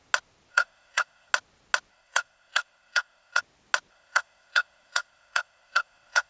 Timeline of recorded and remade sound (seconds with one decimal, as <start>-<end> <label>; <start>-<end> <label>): 0.0-0.5 recorded; 0.5-1.3 remade; 1.3-1.9 recorded; 1.9-3.4 remade; 3.4-3.9 recorded; 3.9-6.3 remade